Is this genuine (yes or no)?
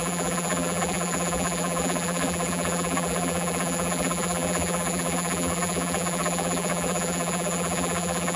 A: no